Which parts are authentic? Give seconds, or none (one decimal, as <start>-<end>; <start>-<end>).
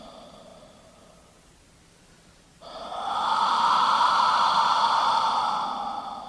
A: 0.0-6.3